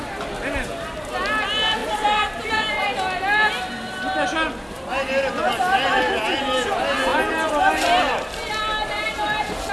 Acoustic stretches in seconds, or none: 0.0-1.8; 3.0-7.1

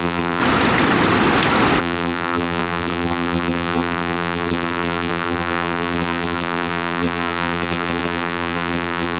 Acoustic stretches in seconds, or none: 0.4-1.8

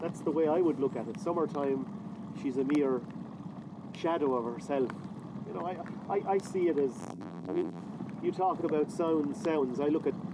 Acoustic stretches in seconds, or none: 0.0-7.0; 7.8-10.3

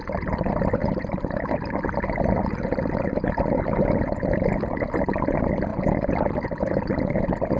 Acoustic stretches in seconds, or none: 0.0-7.6

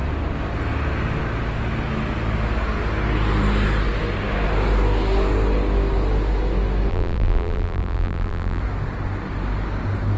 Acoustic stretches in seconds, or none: 0.0-6.9; 8.6-10.2

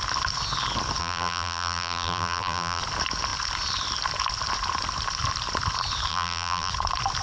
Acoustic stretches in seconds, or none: 0.0-1.0; 2.8-6.1; 6.7-7.2

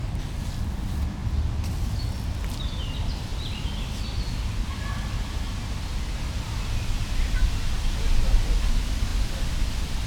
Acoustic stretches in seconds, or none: 0.0-10.1

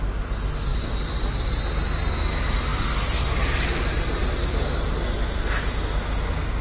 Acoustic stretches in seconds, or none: 0.0-0.7; 1.6-6.6